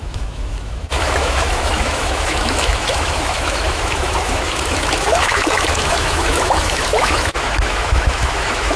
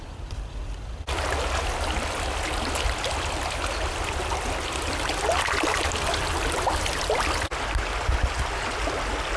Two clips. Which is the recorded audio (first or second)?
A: second